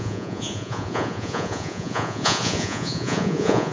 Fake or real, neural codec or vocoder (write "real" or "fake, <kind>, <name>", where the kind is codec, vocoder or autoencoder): fake, vocoder, Vocos